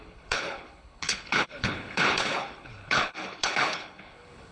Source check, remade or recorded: remade